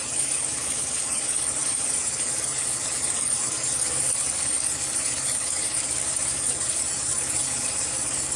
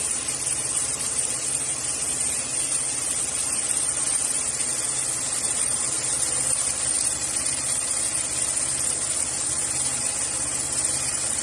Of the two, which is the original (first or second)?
second